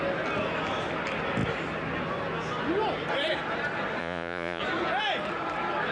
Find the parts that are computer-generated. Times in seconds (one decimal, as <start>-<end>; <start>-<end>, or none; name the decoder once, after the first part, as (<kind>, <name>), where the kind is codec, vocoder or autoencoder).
4.0-4.6 (vocoder, Vocos)